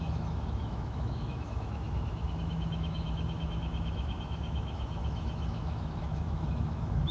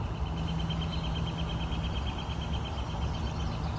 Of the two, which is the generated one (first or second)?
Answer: first